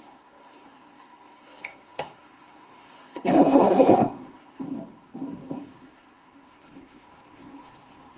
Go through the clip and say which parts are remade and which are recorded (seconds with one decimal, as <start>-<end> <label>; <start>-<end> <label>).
0.0-8.2 remade